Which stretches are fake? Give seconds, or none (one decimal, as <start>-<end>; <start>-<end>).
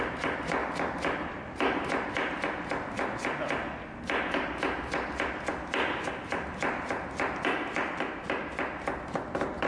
none